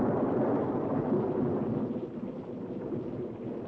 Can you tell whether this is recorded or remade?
recorded